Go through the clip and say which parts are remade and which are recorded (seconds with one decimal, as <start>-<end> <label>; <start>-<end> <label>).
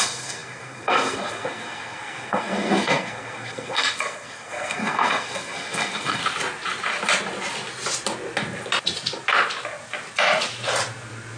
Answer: 0.0-6.2 remade; 6.2-11.4 recorded